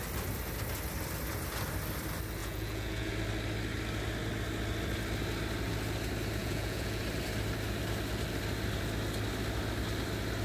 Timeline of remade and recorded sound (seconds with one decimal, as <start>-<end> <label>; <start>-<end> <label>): 0.0-2.4 recorded; 2.4-3.1 remade; 3.1-6.4 recorded; 6.4-7.0 remade; 7.0-10.4 recorded